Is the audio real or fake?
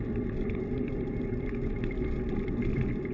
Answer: fake